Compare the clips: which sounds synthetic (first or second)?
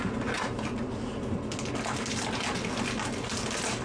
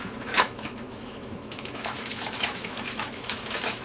second